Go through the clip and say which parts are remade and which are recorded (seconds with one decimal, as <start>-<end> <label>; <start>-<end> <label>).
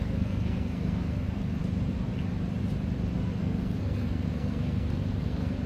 0.0-1.6 remade; 1.6-3.4 recorded; 3.4-5.7 remade